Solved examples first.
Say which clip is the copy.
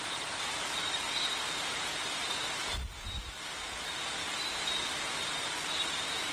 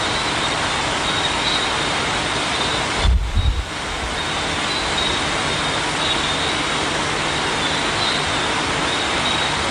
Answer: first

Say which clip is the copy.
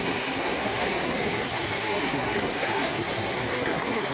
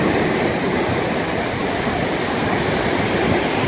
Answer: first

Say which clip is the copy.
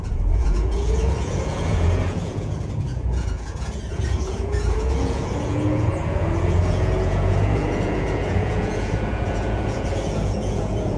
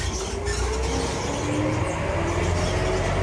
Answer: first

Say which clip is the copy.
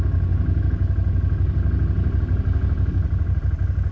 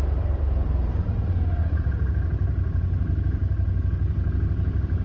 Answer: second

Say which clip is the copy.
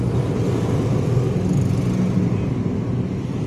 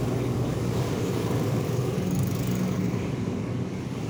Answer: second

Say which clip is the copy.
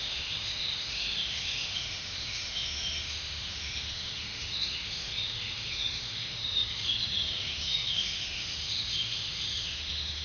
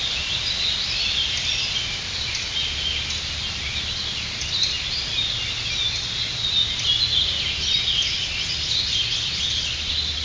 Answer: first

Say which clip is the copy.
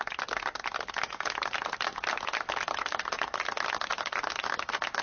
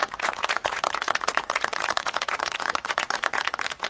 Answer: second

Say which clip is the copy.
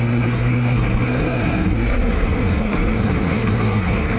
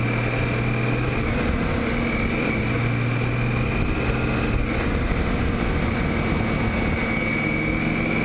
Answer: first